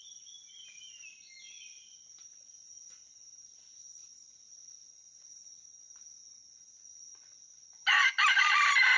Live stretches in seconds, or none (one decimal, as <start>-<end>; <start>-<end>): 0.0-9.0